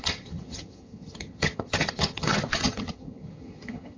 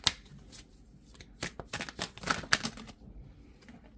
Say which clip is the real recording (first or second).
second